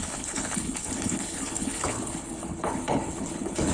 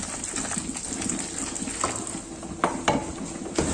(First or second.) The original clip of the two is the second